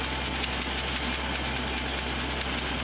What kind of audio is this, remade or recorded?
recorded